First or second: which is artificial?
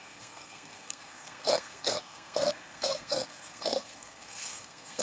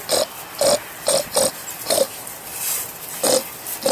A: first